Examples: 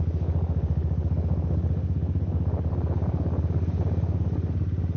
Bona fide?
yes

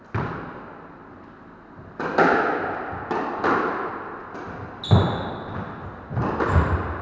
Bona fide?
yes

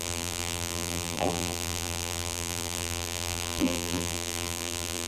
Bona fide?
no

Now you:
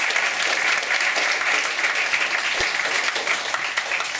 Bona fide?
yes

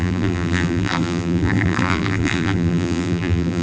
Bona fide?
no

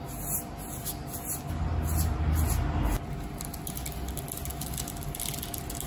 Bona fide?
yes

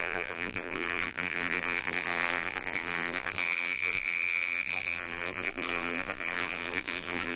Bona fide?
no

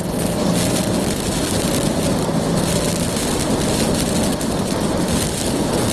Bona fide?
yes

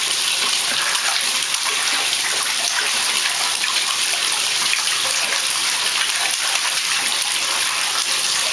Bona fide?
no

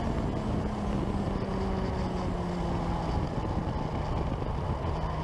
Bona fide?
yes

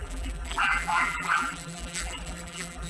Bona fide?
no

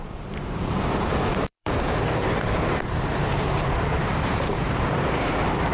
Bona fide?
no